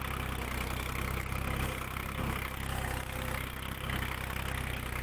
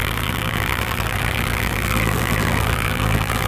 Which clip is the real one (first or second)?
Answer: first